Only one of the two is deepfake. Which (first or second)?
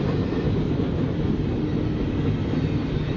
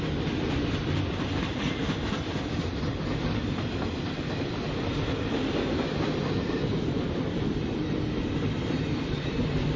second